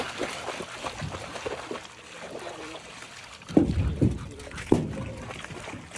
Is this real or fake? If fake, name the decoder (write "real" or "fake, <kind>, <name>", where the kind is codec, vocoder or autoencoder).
real